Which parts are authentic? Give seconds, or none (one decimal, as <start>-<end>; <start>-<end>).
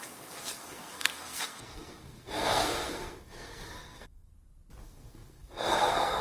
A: 4.3-4.8